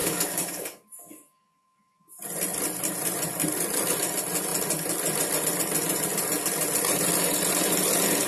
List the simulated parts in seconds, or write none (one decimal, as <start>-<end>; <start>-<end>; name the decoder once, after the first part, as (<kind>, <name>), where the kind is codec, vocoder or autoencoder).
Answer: 0.0-2.1 (codec, DAC)